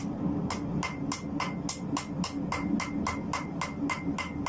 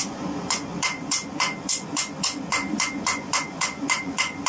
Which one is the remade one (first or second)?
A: second